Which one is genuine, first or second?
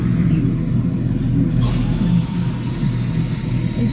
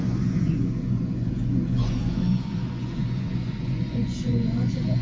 first